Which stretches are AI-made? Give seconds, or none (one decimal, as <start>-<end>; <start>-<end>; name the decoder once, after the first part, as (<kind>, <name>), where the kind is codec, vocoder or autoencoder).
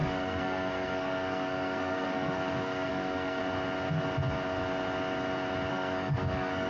0.0-3.4 (codec, SNAC); 5.7-6.7